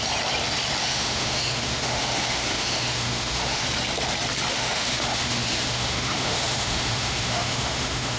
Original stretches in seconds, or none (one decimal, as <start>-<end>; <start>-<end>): 0.0-0.8; 3.6-4.5